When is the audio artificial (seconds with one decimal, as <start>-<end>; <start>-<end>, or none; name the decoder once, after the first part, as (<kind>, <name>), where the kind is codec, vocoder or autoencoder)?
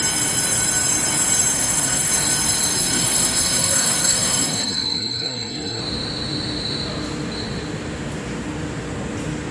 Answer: 1.5-2.1 (codec, SNAC); 2.8-5.8